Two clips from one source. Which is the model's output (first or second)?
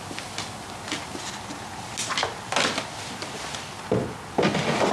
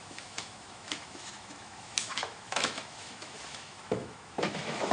second